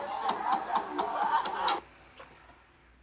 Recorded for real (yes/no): yes